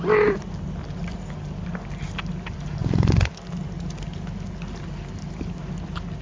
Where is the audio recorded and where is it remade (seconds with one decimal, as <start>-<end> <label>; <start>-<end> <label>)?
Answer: 0.0-6.2 recorded